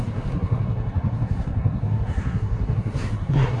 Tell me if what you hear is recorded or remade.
remade